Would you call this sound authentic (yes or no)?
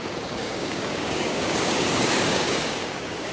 no